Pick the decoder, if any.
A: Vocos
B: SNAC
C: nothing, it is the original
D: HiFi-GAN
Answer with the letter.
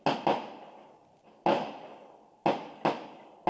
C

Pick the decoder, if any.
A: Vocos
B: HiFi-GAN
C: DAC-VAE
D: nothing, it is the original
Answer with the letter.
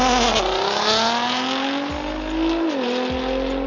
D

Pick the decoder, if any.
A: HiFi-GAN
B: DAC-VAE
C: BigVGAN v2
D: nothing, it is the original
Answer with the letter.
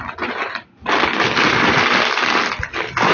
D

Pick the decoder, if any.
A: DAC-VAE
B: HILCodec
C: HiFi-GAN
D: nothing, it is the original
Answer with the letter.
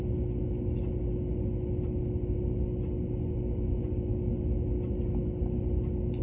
D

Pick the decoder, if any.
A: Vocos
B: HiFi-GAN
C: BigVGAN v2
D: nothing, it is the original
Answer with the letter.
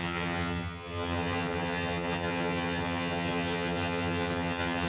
B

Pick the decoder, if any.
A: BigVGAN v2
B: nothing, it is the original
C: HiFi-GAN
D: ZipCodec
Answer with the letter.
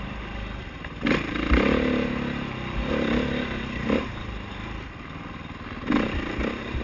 B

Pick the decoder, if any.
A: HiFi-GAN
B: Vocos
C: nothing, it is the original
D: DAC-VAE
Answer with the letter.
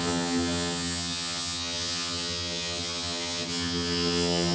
A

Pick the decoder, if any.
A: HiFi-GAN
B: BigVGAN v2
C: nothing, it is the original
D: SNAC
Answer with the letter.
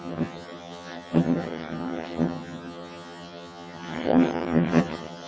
A